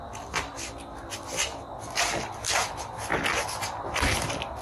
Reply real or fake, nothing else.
real